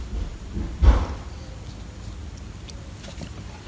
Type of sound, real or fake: real